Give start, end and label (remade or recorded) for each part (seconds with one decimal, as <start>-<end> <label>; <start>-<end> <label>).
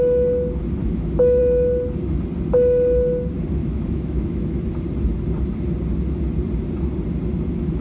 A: 0.0-0.8 recorded; 0.8-1.4 remade; 1.4-3.6 recorded; 3.6-4.7 remade; 4.7-7.8 recorded